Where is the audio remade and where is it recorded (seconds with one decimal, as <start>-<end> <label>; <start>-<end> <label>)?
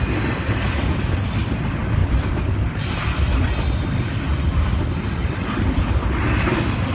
0.0-2.0 recorded; 2.0-6.1 remade; 6.1-6.9 recorded